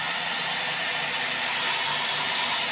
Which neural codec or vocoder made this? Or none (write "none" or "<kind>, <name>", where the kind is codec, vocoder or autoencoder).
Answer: none